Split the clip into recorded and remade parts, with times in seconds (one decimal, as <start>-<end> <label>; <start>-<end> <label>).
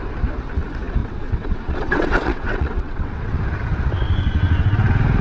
0.0-1.0 recorded; 1.0-3.4 remade; 3.4-5.2 recorded